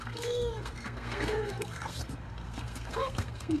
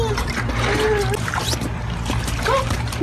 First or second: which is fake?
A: first